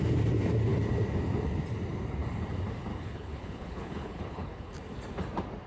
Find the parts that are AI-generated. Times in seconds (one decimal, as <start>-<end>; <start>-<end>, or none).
2.9-4.7